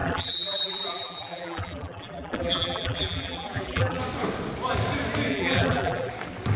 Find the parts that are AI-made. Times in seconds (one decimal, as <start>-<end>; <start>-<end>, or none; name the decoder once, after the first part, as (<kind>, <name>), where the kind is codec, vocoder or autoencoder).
0.0-4.0 (vocoder, BigVGAN v2); 5.3-6.1